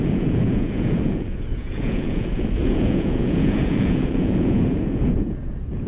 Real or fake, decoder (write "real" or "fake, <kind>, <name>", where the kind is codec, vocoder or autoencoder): fake, vocoder, Vocos